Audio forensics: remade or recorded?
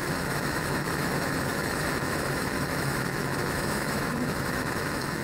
remade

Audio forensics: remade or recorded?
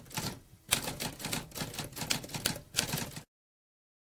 recorded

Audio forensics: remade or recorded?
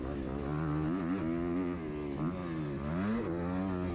recorded